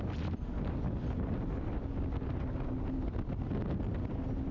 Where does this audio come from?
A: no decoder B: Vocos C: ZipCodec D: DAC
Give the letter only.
A